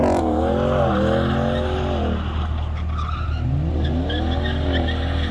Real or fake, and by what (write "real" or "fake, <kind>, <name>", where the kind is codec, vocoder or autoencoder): real